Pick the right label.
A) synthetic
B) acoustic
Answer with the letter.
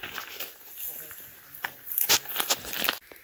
B